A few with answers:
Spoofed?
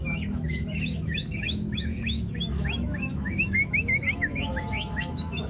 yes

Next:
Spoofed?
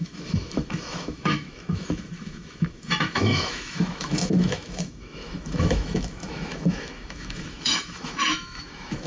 yes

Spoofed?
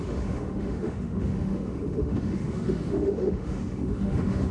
yes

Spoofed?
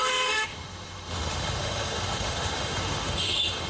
yes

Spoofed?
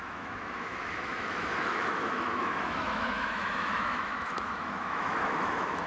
yes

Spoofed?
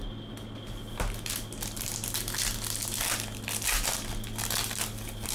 no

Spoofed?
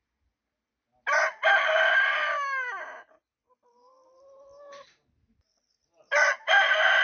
no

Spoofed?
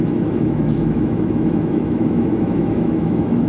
yes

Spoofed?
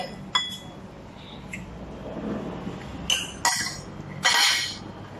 no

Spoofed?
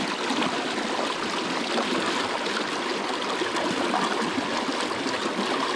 no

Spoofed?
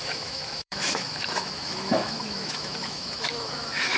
yes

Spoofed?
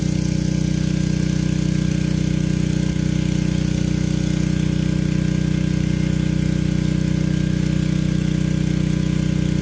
no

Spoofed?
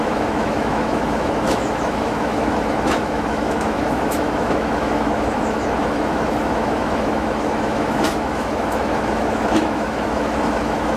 yes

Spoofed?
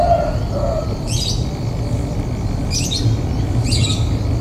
no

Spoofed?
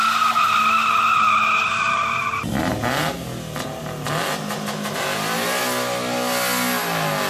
no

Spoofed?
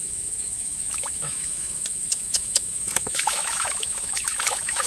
yes